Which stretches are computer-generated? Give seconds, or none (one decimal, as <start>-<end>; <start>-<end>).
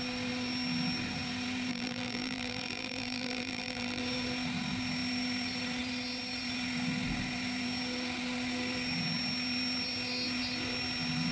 1.7-4.0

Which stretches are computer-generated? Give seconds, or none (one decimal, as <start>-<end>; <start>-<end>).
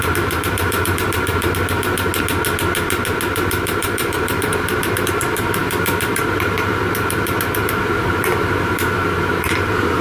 0.0-2.1; 3.3-10.0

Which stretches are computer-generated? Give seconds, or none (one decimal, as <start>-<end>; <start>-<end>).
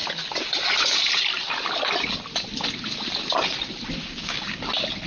4.0-4.6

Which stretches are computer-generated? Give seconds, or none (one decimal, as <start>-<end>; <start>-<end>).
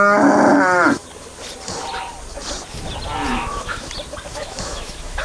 3.3-3.9; 4.3-5.2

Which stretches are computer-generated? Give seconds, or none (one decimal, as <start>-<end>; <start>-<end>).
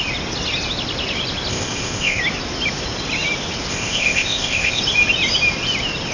1.5-2.2; 3.7-4.8